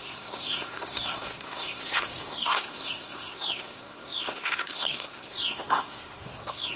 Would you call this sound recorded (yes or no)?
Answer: no